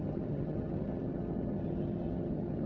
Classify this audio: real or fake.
fake